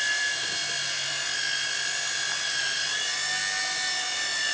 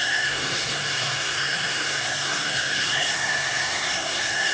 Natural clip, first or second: first